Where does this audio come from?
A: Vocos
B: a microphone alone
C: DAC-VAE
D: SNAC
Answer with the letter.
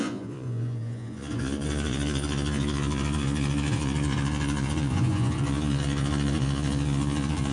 A